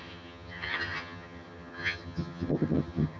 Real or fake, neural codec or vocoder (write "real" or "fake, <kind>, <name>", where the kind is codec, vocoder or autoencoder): fake, vocoder, HiFi-GAN